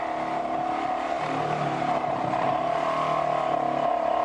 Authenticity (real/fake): real